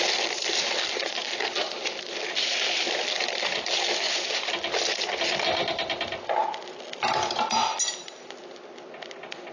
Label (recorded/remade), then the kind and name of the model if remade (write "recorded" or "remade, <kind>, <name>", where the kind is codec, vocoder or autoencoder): recorded